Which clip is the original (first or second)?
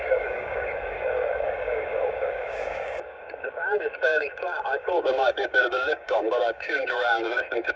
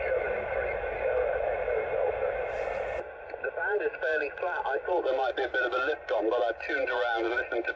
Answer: second